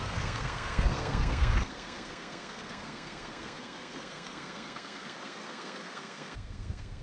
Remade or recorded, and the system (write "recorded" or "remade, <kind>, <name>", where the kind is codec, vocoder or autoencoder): remade, codec, SNAC